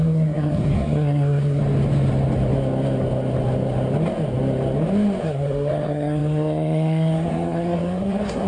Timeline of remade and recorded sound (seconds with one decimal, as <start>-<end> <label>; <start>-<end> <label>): 0.0-1.6 remade; 1.6-5.2 recorded; 5.2-8.5 remade